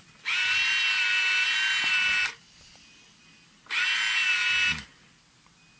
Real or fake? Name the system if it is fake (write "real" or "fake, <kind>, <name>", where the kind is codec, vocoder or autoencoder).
real